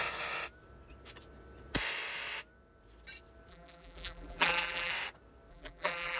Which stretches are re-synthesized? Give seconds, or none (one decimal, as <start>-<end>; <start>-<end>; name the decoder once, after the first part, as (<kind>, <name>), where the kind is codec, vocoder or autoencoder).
3.5-4.9 (vocoder, BigVGAN v2); 5.5-6.2